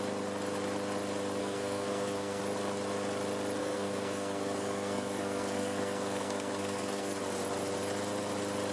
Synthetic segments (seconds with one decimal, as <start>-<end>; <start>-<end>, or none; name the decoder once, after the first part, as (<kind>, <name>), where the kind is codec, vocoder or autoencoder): 1.4-2.4 (codec, SNAC); 3.6-7.2